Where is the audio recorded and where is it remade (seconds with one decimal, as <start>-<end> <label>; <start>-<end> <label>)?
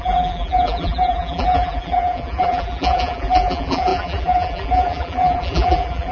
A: 0.0-6.1 remade